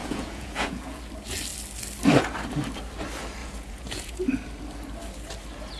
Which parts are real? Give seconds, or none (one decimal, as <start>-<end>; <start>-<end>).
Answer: 1.0-3.4; 4.2-5.8